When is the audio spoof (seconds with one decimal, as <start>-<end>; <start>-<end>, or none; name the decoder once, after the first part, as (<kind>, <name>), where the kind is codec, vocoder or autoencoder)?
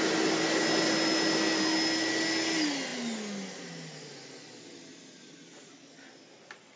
none